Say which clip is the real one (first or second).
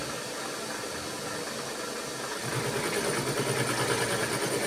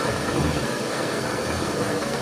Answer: first